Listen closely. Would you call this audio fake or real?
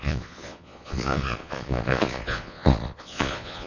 fake